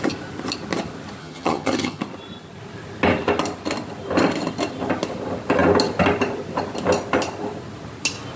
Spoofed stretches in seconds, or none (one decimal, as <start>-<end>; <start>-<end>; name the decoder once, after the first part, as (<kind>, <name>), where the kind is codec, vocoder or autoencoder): 1.2-2.0 (vocoder, HiFi-GAN)